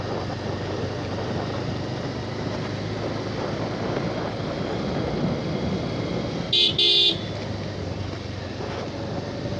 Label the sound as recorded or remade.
recorded